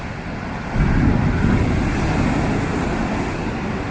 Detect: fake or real real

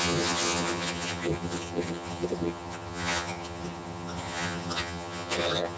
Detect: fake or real fake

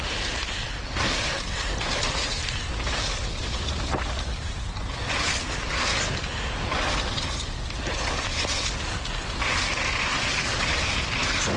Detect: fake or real real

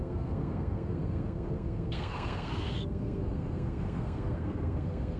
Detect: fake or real fake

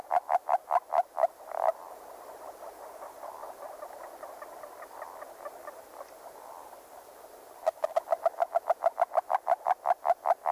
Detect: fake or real real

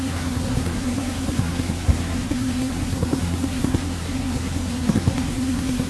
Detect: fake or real fake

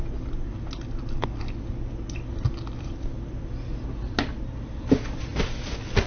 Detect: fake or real real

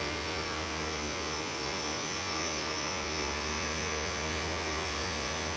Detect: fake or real fake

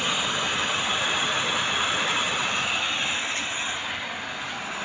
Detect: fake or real real